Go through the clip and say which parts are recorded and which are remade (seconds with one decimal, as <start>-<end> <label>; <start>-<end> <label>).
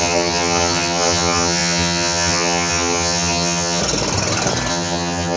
0.0-3.8 remade; 3.8-4.7 recorded; 4.7-5.4 remade